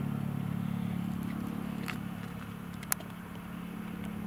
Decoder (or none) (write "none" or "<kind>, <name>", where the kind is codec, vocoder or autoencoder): none